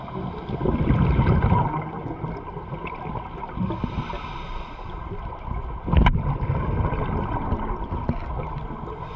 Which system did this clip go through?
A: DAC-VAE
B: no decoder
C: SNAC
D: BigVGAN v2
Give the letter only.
B